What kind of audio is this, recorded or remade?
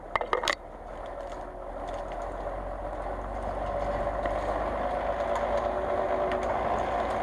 recorded